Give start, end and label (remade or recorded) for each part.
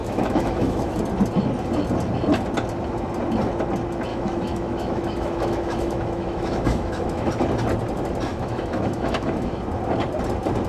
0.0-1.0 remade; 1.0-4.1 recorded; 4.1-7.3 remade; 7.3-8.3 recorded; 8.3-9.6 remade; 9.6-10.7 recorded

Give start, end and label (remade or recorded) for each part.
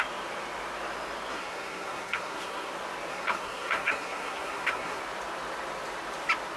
0.0-1.3 recorded; 1.3-2.7 remade; 2.7-3.1 recorded; 3.1-5.0 remade; 5.0-6.6 recorded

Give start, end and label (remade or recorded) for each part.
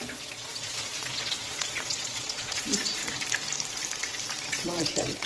0.0-3.0 remade; 3.0-4.5 recorded; 4.5-5.3 remade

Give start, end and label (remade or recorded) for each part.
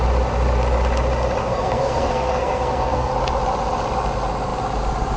0.0-1.4 recorded; 1.4-3.1 remade; 3.1-5.2 recorded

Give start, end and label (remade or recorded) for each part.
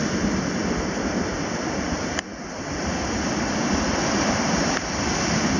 0.0-5.6 recorded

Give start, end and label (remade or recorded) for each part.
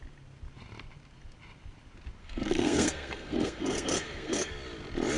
0.0-2.2 recorded; 2.2-4.5 remade; 4.5-5.2 recorded